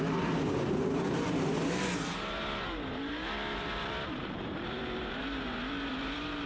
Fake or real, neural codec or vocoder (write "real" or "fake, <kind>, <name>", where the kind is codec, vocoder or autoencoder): fake, vocoder, BigVGAN v2